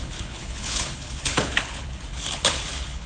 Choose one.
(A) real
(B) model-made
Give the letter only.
B